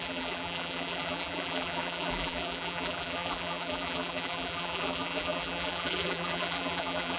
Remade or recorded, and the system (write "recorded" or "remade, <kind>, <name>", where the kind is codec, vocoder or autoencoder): remade, vocoder, BigVGAN v2